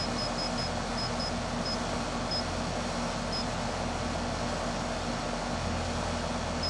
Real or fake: real